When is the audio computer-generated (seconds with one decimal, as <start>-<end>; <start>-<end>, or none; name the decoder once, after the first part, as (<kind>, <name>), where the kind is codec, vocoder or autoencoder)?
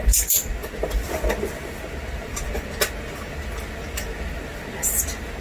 none